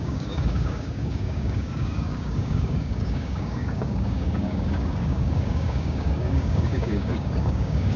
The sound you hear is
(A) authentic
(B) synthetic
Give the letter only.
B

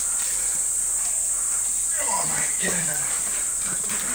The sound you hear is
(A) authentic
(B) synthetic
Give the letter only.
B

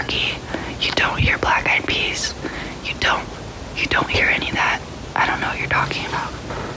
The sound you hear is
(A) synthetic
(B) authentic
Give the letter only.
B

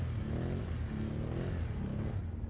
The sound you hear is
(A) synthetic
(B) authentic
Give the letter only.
B